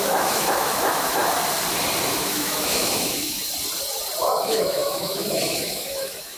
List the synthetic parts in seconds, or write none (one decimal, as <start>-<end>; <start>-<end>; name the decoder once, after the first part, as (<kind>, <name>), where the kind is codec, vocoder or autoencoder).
0.0-1.2 (autoencoder, DAC-VAE); 2.0-3.4; 4.2-6.4